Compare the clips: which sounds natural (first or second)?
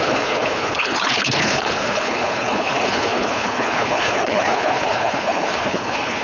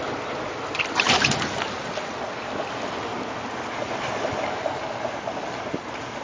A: second